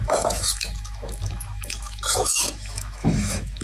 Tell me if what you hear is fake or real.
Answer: fake